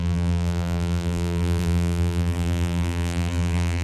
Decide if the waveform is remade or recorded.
remade